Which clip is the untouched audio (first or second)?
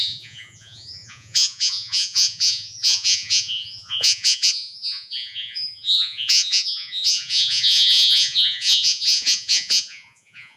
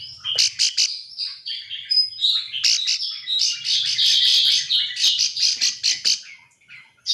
second